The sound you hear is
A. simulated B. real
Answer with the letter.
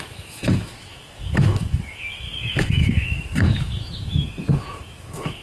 A